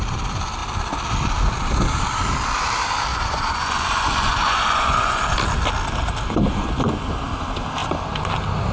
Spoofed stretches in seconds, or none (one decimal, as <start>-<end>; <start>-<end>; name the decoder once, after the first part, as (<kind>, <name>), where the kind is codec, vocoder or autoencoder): 3.1-5.2 (vocoder, Vocos)